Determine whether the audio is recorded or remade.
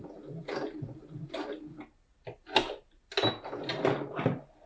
recorded